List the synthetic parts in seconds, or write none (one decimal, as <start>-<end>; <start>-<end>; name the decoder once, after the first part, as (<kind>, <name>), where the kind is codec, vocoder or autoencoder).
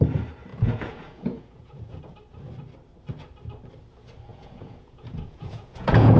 0.5-2.0 (vocoder, Vocos); 4.3-6.2